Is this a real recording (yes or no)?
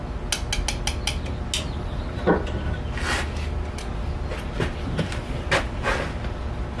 yes